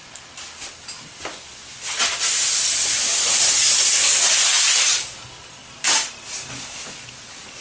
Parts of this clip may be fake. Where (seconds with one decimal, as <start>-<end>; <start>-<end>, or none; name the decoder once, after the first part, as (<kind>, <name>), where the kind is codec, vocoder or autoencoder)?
none